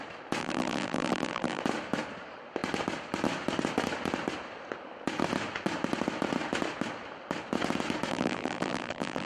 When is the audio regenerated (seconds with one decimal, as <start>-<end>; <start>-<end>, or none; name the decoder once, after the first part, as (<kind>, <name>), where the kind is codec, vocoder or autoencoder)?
0.4-1.6 (vocoder, BigVGAN v2); 8.1-9.3